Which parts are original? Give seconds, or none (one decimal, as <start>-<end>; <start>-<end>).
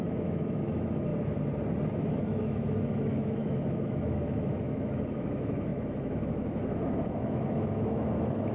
1.1-2.2